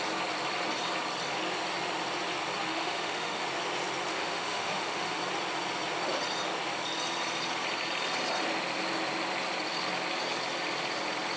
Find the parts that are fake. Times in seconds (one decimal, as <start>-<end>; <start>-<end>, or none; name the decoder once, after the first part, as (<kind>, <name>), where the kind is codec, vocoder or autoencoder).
2.7-3.4 (autoencoder, DAC-VAE); 4.1-5.2